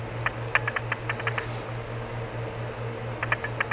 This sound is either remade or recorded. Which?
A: recorded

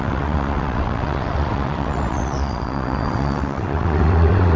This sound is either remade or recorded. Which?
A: remade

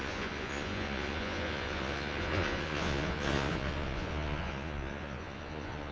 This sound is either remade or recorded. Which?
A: remade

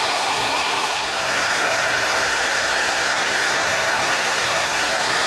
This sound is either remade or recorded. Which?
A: remade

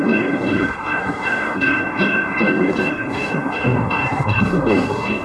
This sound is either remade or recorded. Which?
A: remade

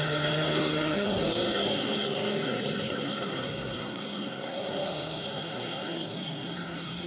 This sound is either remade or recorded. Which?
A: remade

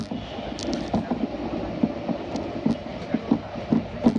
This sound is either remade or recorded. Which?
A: recorded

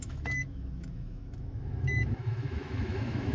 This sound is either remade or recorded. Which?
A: remade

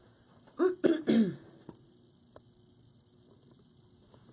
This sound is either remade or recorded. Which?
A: recorded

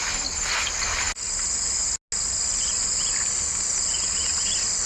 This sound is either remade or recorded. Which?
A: recorded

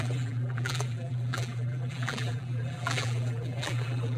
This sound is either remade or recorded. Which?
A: remade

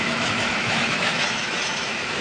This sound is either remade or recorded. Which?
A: remade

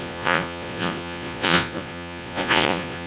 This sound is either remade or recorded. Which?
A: remade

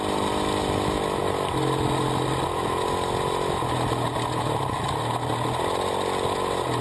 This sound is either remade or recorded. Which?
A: recorded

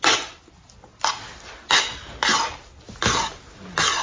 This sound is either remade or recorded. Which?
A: recorded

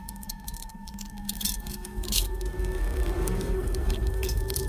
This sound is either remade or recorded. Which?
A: remade